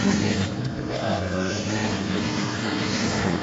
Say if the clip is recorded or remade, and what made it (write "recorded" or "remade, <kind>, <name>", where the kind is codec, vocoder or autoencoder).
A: remade, codec, SNAC